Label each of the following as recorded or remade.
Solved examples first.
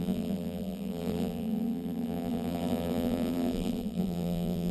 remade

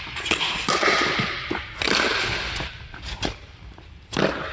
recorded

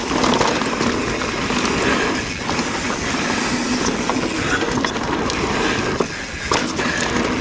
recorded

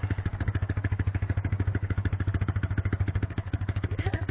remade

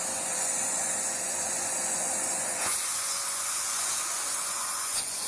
remade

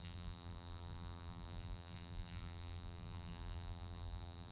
remade